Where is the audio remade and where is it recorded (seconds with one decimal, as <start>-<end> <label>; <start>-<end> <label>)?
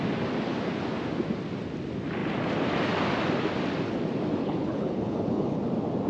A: 0.0-4.4 recorded; 4.4-5.6 remade; 5.6-6.1 recorded